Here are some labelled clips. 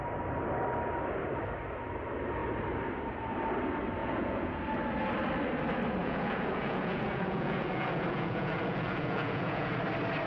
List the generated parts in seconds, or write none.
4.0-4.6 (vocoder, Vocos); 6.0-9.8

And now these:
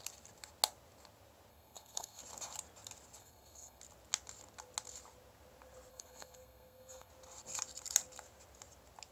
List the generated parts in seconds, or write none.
1.5-2.2 (codec, SNAC); 3.2-3.8; 5.9-7.1

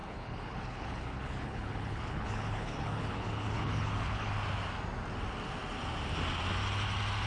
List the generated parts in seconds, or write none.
0.0-4.3 (codec, HILCodec)

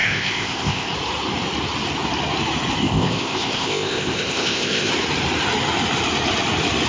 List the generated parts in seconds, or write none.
0.0-0.9 (codec, ZipCodec); 2.8-4.9